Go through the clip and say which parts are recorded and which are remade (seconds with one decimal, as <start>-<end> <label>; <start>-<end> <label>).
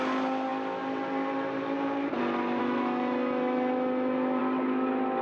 0.0-2.6 recorded; 2.6-4.4 remade; 4.4-5.2 recorded